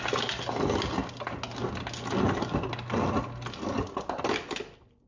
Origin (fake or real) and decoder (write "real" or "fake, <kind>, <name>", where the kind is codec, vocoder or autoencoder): real